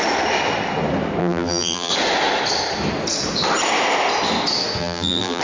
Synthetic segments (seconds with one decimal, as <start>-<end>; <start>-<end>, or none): 1.2-1.9; 4.8-5.4